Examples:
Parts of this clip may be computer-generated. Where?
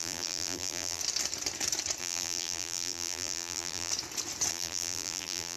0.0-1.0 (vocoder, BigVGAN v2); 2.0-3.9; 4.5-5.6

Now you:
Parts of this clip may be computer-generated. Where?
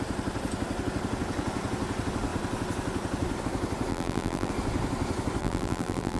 3.9-4.5 (vocoder, BigVGAN v2); 5.4-6.2